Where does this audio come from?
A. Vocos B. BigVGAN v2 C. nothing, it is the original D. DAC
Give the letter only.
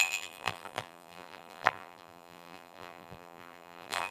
B